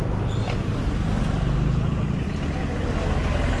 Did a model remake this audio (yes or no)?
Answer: no